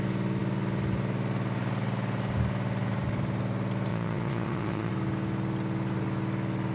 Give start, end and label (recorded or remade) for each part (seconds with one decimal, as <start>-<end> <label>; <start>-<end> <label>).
0.0-3.9 recorded; 3.9-4.9 remade; 4.9-6.7 recorded